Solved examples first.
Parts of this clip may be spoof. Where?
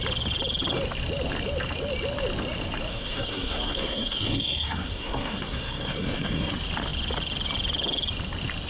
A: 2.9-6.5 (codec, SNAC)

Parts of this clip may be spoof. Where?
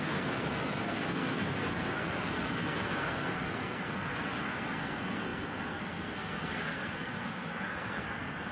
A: 0.0-8.5 (codec, SNAC)